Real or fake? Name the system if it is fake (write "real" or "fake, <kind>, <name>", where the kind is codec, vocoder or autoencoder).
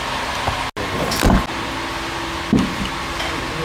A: real